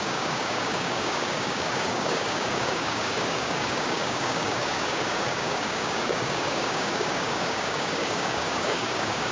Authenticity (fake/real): fake